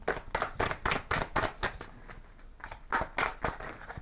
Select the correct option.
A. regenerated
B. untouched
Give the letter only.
B